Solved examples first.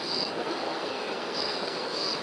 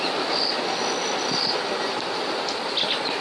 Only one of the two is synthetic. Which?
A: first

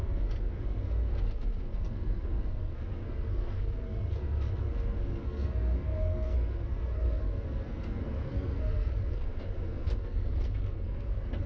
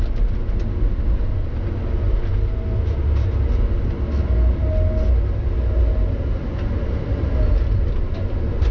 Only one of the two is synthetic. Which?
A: first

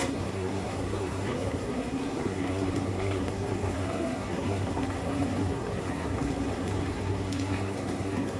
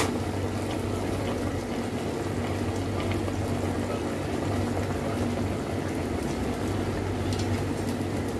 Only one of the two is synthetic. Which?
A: first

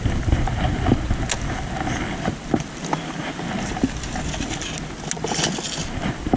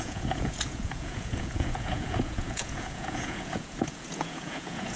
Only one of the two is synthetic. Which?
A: second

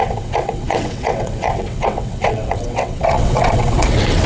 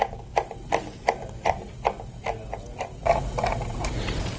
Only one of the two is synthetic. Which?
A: first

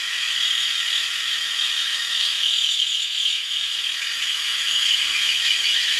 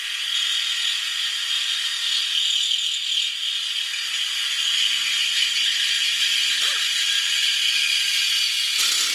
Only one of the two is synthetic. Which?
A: first